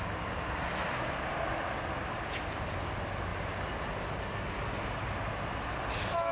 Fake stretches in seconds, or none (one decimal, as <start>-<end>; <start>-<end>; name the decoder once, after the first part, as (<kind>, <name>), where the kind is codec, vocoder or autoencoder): none